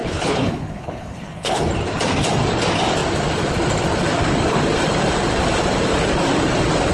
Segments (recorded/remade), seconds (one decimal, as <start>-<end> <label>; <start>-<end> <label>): 0.0-1.7 remade; 1.7-6.9 recorded

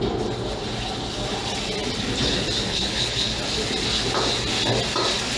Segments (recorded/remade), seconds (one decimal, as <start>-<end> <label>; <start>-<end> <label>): 0.0-2.7 recorded; 2.7-3.4 remade; 3.4-5.4 recorded

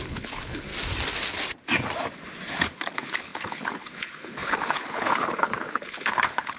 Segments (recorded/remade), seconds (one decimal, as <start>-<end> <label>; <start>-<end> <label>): 0.0-0.7 remade; 0.7-2.6 recorded; 2.6-6.6 remade

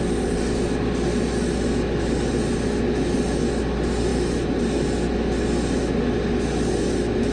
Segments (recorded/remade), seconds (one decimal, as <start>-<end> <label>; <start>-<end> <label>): 0.0-7.3 recorded

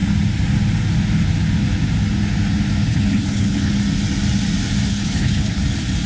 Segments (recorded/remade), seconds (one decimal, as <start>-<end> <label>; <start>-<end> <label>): 0.0-2.9 recorded; 2.9-3.7 remade; 3.7-4.9 recorded; 4.9-5.6 remade; 5.6-6.1 recorded